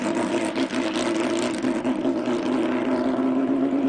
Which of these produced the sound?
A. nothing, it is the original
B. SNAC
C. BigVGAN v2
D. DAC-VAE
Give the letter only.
A